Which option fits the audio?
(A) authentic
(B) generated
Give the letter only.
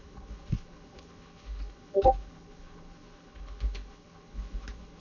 B